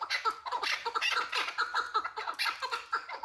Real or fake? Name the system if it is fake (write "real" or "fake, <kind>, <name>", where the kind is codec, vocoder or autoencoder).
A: real